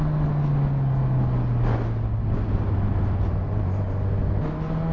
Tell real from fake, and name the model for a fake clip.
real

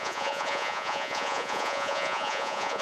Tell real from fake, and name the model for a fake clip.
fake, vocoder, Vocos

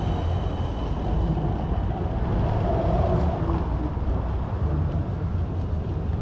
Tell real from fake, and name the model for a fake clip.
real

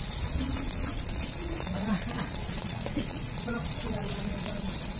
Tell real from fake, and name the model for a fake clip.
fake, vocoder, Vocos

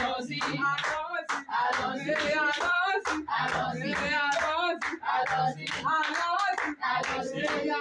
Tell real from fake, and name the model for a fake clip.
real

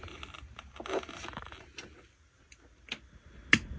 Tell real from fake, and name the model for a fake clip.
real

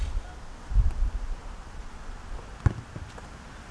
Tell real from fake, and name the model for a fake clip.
real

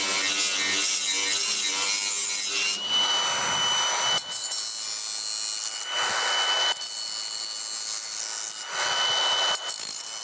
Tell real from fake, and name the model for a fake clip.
real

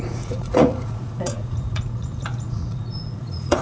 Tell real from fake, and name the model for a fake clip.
fake, vocoder, Vocos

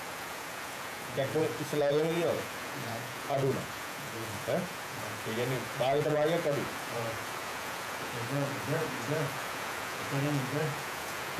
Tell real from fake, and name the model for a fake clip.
fake, vocoder, Vocos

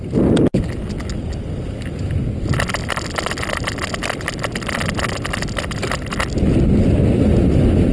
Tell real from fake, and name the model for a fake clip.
real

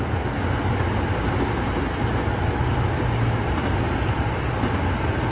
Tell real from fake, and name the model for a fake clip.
real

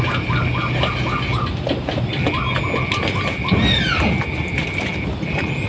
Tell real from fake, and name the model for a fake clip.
real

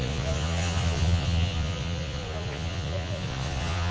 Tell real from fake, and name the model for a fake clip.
fake, vocoder, Vocos